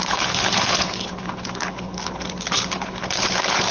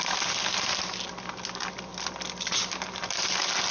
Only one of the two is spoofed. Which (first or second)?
first